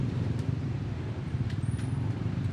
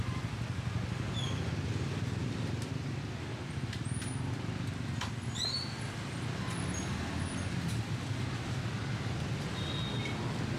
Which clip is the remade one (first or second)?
first